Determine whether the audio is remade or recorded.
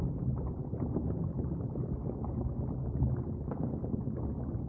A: recorded